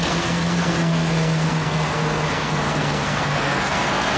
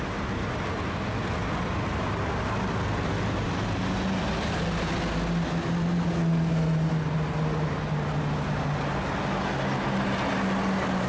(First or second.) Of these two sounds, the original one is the second